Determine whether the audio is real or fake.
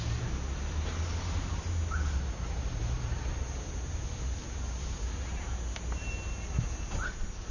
real